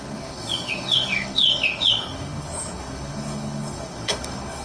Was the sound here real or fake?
fake